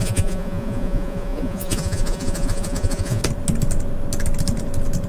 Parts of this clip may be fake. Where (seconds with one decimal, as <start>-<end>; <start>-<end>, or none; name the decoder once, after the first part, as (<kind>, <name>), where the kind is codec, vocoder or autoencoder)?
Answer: 0.0-3.2 (vocoder, Vocos)